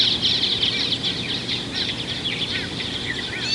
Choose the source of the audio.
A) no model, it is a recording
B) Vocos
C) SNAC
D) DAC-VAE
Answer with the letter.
A